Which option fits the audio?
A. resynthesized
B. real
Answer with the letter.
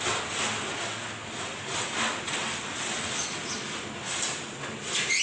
B